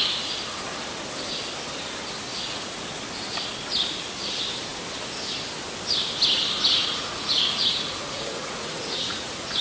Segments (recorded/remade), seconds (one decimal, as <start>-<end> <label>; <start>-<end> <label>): 0.0-2.3 recorded; 2.3-2.8 remade; 2.8-6.8 recorded; 6.8-9.6 remade